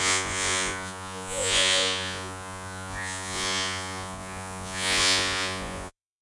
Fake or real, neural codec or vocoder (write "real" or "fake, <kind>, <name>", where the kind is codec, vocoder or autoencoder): fake, vocoder, Vocos